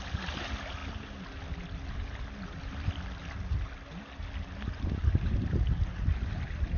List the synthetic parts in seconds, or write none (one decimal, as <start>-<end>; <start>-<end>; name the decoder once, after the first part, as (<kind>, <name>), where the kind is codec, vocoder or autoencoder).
none